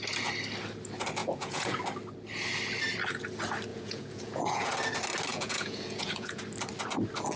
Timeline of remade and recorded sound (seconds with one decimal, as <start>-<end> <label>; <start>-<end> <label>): 0.0-1.2 recorded; 1.2-1.8 remade; 1.8-3.7 recorded; 3.7-4.7 remade; 4.7-5.3 recorded; 5.3-6.4 remade; 6.4-7.4 recorded